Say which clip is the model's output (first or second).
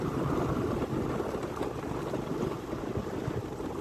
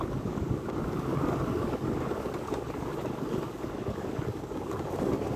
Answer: second